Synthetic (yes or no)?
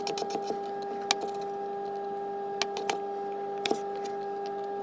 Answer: no